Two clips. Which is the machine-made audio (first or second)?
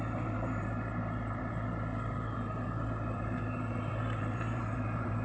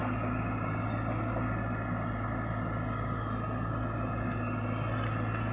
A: first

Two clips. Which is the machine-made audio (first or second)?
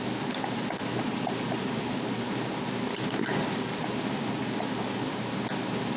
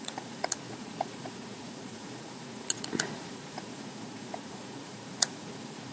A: second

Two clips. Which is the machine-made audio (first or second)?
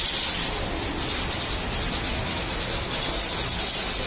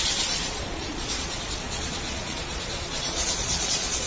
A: second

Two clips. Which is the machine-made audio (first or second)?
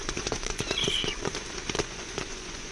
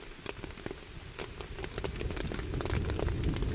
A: first